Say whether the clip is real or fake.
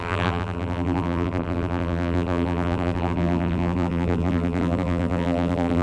fake